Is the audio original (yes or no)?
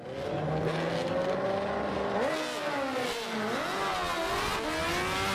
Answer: yes